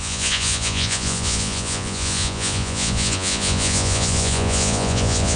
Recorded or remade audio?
remade